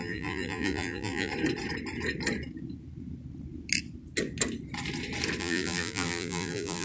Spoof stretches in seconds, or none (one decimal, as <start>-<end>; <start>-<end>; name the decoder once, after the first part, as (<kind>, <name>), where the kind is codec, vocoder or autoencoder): 0.0-1.3 (vocoder, BigVGAN v2); 5.4-6.8